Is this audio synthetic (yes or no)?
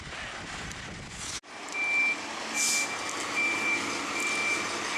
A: no